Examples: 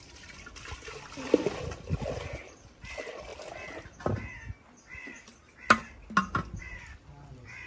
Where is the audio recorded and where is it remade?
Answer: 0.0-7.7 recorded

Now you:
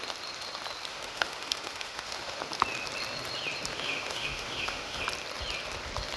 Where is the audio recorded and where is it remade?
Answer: 0.0-0.9 recorded; 0.9-2.4 remade; 2.4-3.7 recorded; 3.7-5.0 remade; 5.0-6.2 recorded